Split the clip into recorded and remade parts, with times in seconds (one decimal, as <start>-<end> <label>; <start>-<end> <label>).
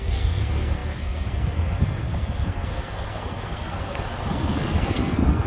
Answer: 0.0-5.5 remade